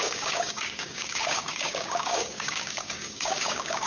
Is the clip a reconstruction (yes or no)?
yes